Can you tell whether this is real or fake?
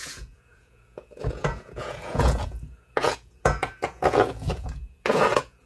fake